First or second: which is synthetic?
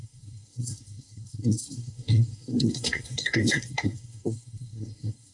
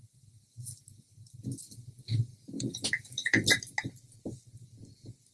first